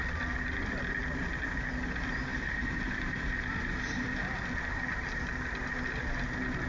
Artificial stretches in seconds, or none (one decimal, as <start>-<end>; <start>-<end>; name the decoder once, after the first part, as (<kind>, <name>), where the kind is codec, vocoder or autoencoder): none